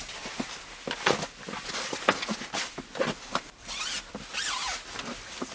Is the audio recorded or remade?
recorded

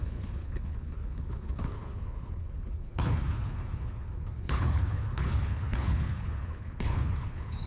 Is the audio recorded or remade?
remade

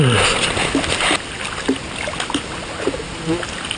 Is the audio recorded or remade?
recorded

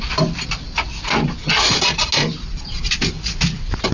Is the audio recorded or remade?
recorded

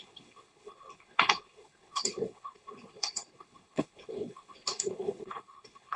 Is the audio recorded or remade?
remade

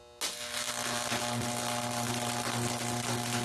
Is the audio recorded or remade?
recorded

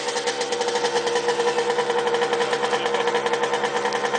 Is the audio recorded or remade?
recorded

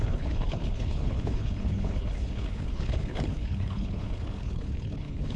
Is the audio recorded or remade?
remade